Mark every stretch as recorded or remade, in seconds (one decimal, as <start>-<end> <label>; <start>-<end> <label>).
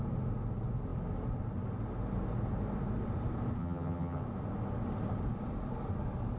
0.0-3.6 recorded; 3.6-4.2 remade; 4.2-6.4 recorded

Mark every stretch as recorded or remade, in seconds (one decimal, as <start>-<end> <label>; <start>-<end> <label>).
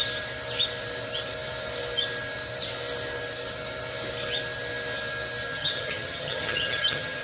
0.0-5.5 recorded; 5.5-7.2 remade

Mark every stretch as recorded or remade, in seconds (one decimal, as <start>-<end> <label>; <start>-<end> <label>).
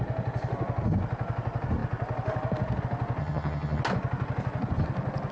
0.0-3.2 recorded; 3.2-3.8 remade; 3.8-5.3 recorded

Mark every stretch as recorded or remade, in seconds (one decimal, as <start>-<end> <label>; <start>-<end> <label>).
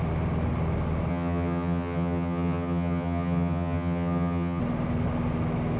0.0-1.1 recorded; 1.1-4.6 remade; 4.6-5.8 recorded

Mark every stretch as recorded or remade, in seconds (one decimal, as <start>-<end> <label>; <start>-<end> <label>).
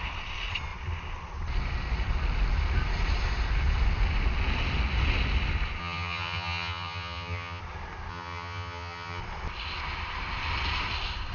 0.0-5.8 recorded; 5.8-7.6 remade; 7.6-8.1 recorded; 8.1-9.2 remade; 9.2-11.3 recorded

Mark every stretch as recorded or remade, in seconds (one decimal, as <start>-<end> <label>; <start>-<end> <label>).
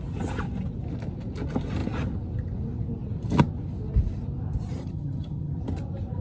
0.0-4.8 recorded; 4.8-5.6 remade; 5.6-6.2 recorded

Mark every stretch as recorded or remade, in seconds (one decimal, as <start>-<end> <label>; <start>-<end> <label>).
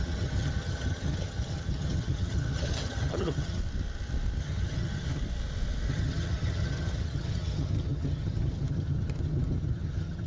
0.0-3.6 remade; 3.6-4.4 recorded; 4.4-5.2 remade; 5.2-5.9 recorded; 5.9-10.3 remade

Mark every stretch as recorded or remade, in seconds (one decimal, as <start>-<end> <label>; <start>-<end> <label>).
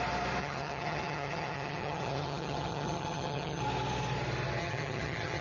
0.0-0.4 recorded; 0.4-3.6 remade; 3.6-4.6 recorded; 4.6-5.4 remade